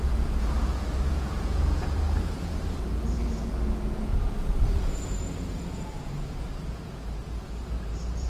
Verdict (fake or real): fake